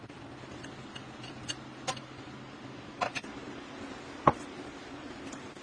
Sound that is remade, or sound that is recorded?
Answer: recorded